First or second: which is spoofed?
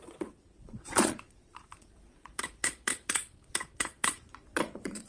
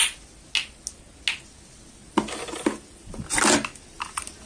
first